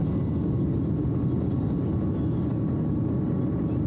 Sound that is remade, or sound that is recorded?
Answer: recorded